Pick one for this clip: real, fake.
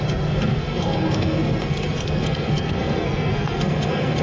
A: fake